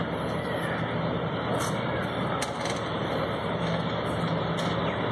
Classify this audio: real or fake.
real